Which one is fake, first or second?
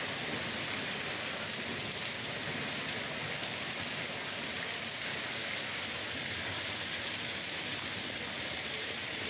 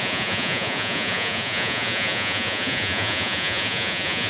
second